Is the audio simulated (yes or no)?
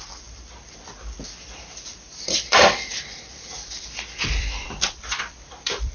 yes